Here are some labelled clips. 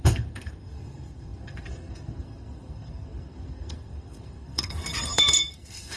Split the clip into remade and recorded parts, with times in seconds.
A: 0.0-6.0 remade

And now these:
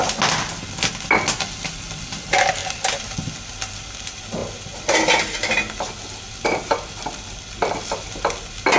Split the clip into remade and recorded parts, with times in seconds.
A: 0.0-8.8 recorded

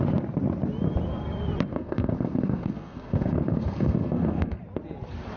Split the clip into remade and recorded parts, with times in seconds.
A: 0.0-1.7 recorded; 1.7-4.6 remade; 4.6-5.4 recorded

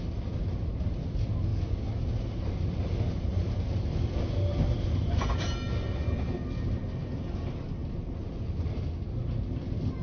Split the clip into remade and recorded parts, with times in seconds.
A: 0.0-10.0 recorded

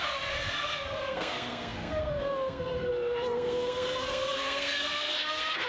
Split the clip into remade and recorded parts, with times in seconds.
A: 0.0-5.7 remade

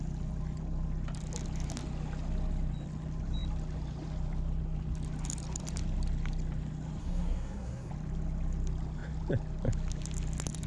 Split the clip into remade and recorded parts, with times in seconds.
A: 0.0-7.0 recorded; 7.0-7.9 remade; 7.9-10.7 recorded

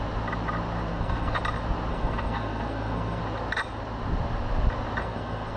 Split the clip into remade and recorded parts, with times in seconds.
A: 0.0-0.9 recorded; 0.9-1.4 remade; 1.4-1.9 recorded; 1.9-3.2 remade; 3.2-5.0 recorded; 5.0-5.6 remade

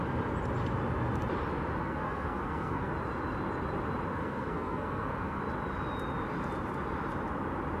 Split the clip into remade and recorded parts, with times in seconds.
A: 0.0-1.8 recorded; 1.8-2.9 remade; 2.9-4.1 recorded; 4.1-5.4 remade; 5.4-7.8 recorded